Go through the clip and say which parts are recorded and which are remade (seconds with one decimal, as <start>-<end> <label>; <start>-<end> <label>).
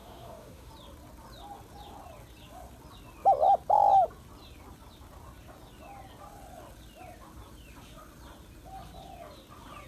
0.0-0.7 remade; 0.7-9.9 recorded